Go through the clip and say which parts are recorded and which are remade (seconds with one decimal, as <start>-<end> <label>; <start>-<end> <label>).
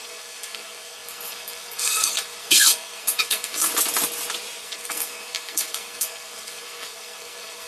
0.0-3.7 remade; 3.7-4.6 recorded; 4.6-7.7 remade